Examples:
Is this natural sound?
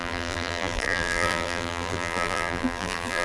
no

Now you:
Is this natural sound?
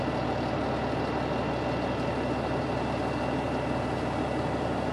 yes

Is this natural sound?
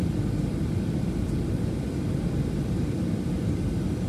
no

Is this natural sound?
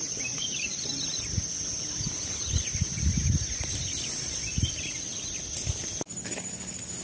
yes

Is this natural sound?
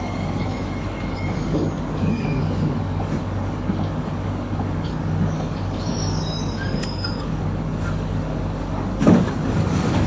no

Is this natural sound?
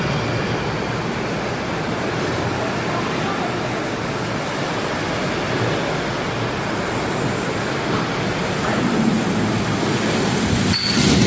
yes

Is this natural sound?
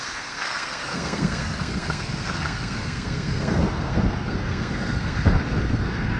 no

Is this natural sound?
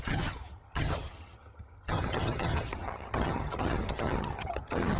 no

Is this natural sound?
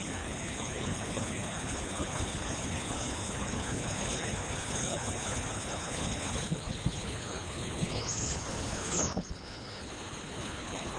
no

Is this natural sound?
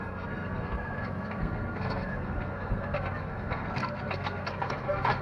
no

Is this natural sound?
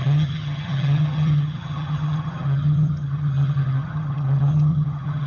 no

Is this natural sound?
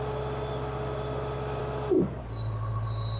yes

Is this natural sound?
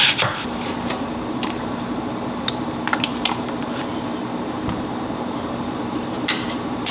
no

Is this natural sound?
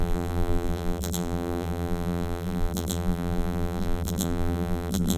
no